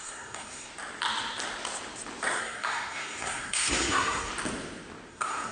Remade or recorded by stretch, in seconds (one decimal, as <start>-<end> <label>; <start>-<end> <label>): 0.0-0.7 remade; 0.7-2.4 recorded; 2.4-4.3 remade; 4.3-5.1 recorded; 5.1-5.5 remade